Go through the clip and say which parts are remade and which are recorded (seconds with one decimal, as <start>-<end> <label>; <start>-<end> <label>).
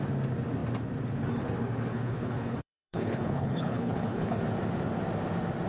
0.0-1.9 recorded; 1.9-4.4 remade; 4.4-5.7 recorded